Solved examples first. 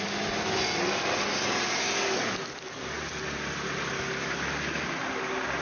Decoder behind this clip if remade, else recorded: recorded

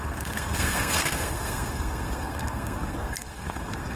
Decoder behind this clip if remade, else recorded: remade, codec, SNAC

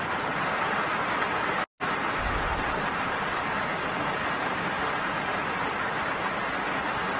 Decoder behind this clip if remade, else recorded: recorded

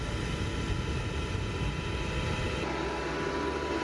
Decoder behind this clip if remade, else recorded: recorded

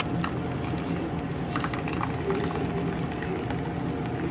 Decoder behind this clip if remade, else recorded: recorded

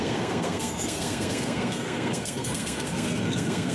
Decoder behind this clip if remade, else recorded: remade, codec, SNAC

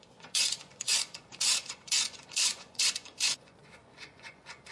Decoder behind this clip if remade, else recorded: remade, vocoder, Vocos